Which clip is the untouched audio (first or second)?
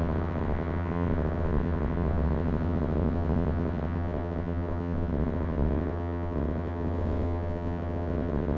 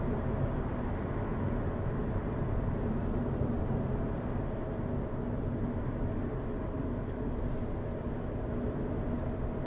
second